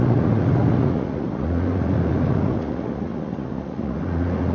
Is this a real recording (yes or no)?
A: no